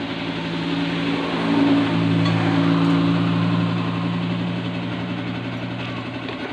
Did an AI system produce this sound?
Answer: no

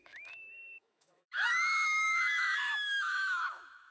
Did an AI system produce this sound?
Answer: yes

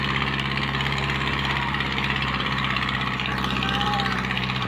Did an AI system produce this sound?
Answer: yes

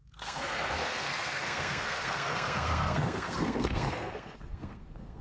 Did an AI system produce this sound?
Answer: yes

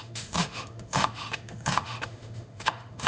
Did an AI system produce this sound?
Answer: yes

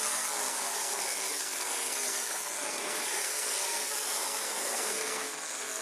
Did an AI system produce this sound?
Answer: yes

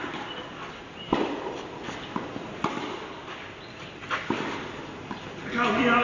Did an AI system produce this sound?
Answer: no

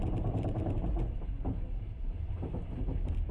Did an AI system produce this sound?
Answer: yes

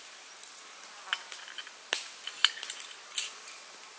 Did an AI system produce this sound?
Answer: no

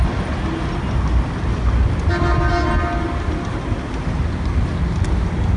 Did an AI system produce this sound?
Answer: no